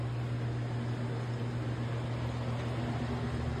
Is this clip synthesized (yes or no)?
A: no